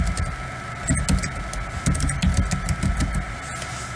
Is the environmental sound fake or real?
real